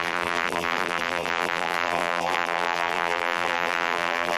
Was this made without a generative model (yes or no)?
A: no